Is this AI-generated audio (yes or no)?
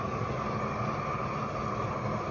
no